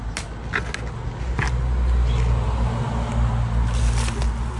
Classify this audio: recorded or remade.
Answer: recorded